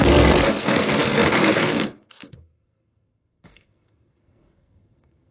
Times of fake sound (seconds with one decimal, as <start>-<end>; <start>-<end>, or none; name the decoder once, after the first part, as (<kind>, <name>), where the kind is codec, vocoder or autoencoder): 0.0-5.3 (codec, SNAC)